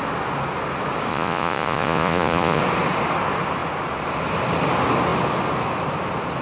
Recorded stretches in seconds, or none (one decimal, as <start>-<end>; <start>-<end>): 0.0-1.1; 2.6-6.4

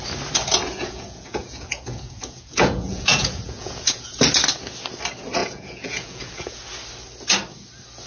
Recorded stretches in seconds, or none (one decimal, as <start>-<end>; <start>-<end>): 0.0-0.6; 4.2-5.4; 6.6-8.1

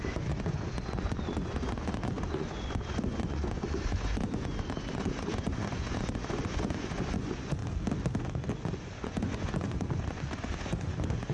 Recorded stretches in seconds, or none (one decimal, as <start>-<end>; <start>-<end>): 7.6-8.2

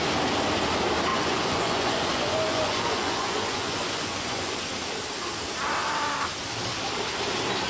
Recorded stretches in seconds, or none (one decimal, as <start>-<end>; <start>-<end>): 0.0-1.1; 4.6-7.7

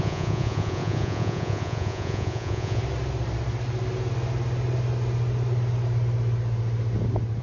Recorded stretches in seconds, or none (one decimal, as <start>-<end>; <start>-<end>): 2.8-7.4

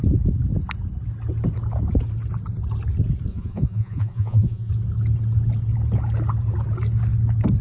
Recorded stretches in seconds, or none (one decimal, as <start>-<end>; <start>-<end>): 0.0-3.3; 4.7-7.6

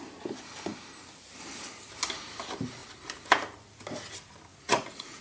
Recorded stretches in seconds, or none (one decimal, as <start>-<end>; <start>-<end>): 0.0-4.5

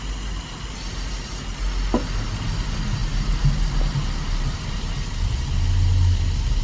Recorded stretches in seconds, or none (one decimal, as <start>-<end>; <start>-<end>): 0.0-6.6